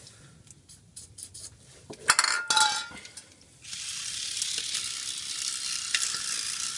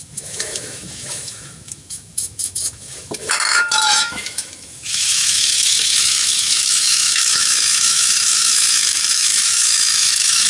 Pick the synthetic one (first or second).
second